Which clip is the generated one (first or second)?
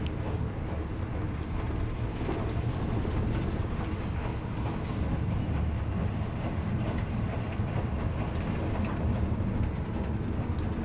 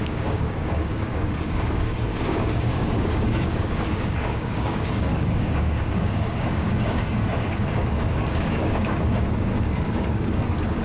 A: second